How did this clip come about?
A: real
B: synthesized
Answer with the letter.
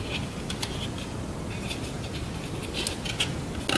A